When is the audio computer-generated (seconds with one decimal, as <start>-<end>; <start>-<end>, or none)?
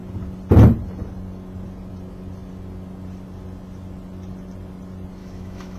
5.2-5.8